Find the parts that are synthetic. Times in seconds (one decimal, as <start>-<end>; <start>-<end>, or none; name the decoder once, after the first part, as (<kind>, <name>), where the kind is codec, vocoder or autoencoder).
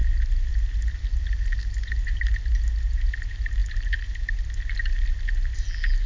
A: none